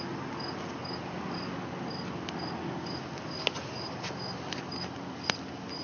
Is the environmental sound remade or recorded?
recorded